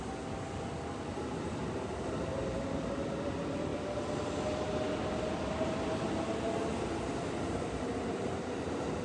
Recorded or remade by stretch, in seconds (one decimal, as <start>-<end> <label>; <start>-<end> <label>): 0.0-9.0 recorded